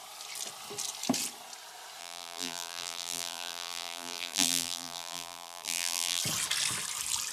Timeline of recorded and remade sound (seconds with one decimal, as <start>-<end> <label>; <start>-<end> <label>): 0.0-2.0 recorded; 2.0-6.2 remade; 6.2-7.3 recorded